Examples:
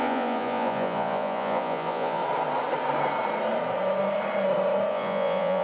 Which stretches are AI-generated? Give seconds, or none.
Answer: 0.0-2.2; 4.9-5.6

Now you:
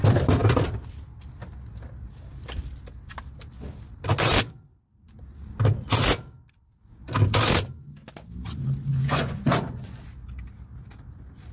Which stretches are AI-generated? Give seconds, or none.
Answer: 8.9-10.0

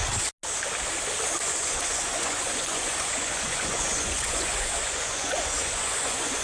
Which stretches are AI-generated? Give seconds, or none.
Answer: 1.4-6.4